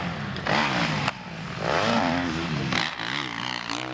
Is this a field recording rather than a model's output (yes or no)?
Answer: yes